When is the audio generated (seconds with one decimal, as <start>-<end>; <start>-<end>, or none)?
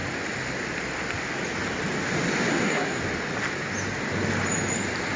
2.5-3.0